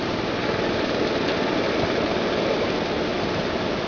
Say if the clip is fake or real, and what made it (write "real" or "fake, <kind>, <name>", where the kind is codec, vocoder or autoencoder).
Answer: real